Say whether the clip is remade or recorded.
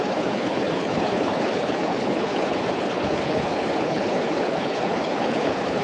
remade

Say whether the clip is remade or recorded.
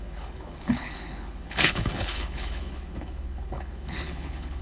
remade